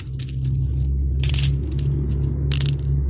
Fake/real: real